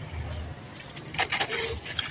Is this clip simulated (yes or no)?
no